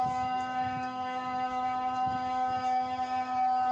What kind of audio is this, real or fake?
fake